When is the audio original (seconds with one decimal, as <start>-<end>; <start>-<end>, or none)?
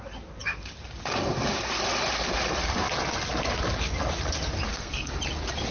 0.0-4.7; 5.2-5.7